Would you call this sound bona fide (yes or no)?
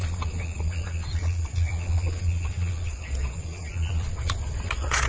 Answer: no